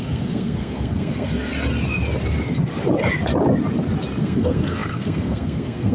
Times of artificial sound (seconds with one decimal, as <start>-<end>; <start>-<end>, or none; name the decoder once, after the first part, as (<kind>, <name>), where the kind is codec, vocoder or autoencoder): 0.0-1.5 (codec, SNAC); 4.2-5.9